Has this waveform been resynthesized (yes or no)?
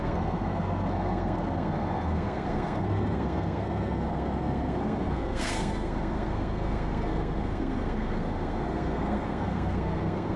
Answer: yes